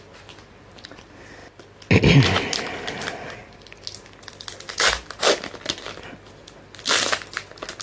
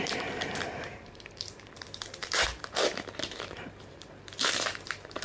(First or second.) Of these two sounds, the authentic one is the first